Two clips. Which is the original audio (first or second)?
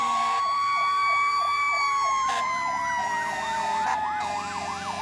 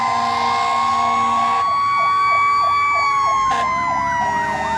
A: second